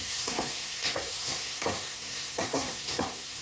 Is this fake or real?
fake